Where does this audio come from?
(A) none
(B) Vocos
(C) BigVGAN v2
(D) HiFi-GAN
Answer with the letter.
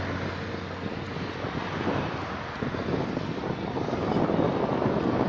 A